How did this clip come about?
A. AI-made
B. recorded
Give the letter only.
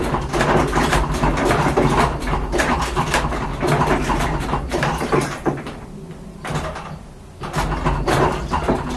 B